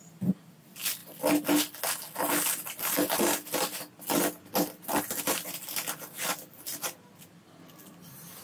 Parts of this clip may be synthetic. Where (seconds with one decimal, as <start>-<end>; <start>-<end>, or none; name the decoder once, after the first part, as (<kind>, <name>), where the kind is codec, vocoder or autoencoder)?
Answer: none